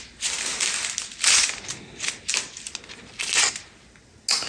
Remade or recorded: recorded